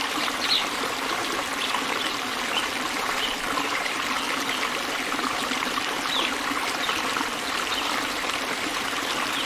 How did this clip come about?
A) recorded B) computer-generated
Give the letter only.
B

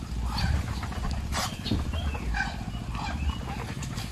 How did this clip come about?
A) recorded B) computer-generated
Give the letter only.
A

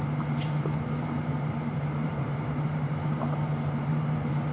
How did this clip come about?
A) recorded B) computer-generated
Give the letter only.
B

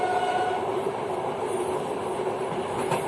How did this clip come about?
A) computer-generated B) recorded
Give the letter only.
A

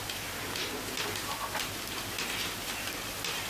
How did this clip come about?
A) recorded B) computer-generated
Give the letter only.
A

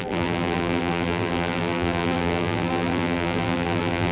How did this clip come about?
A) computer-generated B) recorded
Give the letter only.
A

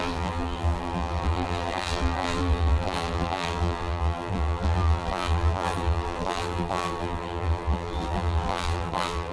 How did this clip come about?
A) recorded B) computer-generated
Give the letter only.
B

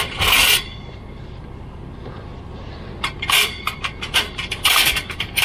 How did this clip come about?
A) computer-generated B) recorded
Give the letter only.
A